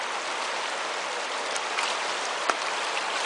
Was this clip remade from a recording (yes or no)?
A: no